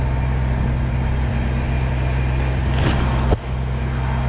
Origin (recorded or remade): recorded